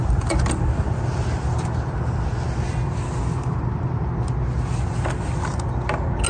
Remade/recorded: recorded